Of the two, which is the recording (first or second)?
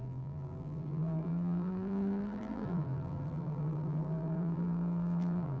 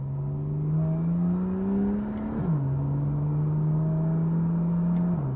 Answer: second